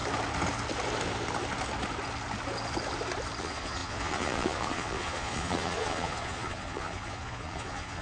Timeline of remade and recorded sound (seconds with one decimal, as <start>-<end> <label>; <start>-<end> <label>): 0.0-3.4 recorded; 3.4-8.0 remade